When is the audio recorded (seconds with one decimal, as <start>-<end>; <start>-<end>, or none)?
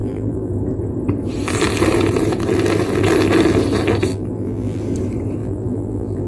0.5-4.1; 4.8-5.4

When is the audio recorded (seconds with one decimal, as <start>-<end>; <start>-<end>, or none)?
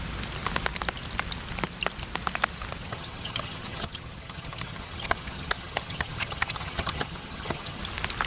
0.0-2.8; 7.8-8.3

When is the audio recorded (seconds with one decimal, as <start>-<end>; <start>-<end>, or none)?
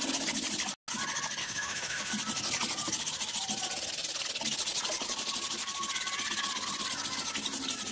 0.0-1.4; 2.1-7.9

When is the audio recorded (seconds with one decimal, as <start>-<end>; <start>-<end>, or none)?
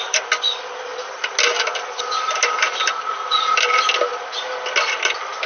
0.0-5.5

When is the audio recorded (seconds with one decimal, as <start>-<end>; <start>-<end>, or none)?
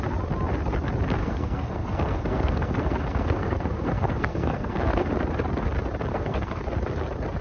0.0-1.2; 5.1-6.1; 6.6-7.4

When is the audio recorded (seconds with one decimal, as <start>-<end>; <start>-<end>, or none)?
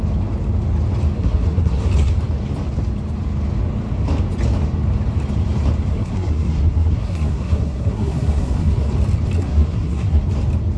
0.0-1.2; 1.9-5.9; 8.9-9.4; 10.2-10.8